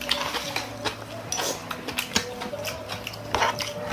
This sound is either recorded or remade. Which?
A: recorded